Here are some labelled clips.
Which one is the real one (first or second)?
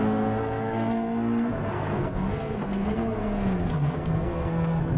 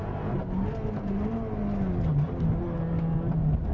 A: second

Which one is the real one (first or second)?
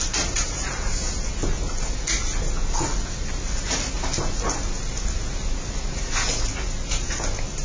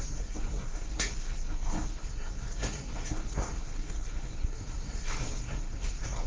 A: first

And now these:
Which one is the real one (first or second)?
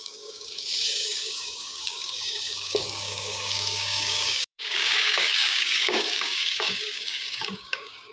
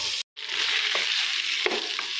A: second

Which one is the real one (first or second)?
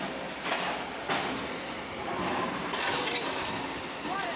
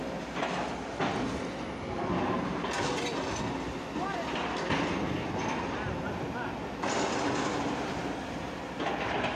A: second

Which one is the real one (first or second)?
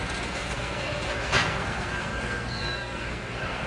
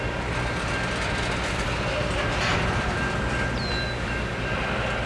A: second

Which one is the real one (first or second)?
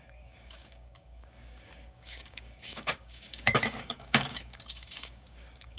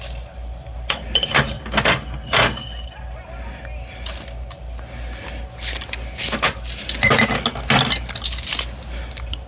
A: second